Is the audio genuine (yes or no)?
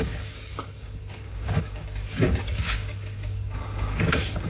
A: no